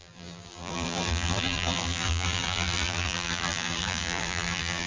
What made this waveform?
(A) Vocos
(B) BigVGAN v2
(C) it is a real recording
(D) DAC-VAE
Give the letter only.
B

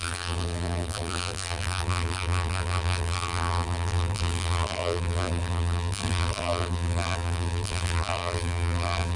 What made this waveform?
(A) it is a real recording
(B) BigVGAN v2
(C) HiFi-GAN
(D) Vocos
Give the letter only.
B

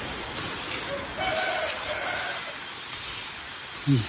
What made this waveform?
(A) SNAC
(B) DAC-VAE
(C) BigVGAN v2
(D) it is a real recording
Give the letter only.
D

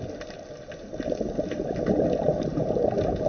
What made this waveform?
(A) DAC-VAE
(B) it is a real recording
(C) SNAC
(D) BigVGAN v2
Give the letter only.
B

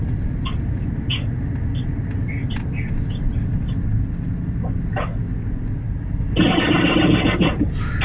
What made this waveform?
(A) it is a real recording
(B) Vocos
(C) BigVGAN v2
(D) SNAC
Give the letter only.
A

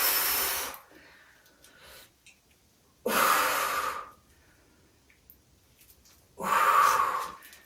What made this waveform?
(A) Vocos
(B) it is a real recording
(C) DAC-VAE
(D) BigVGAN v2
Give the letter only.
B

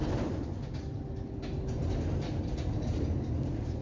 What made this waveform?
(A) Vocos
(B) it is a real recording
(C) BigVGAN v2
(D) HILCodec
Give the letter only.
B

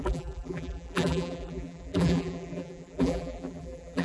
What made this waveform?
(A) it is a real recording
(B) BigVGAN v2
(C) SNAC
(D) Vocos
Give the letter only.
B